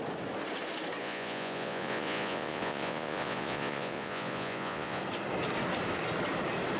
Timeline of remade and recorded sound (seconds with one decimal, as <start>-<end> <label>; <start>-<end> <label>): 0.0-1.0 recorded; 1.0-5.0 remade; 5.0-6.8 recorded